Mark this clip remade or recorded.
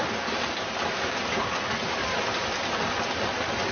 recorded